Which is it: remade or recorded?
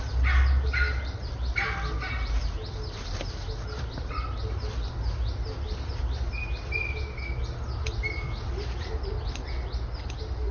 recorded